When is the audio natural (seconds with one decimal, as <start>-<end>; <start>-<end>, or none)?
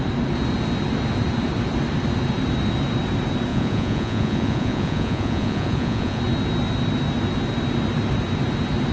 0.0-3.5; 6.2-8.9